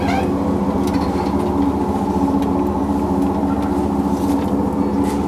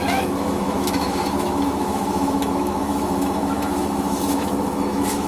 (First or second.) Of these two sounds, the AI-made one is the second